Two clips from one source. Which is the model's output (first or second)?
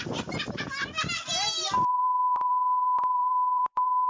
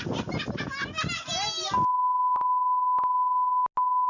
first